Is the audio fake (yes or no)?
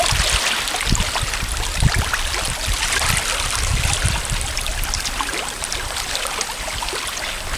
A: no